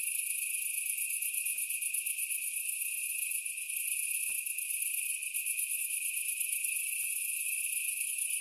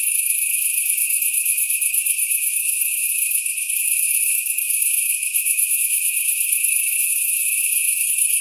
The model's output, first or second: second